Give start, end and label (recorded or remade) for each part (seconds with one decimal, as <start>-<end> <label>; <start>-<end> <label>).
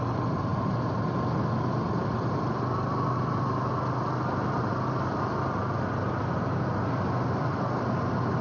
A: 0.0-8.4 recorded